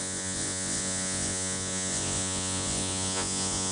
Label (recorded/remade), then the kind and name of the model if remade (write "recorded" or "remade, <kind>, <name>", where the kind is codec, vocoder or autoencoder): remade, vocoder, Vocos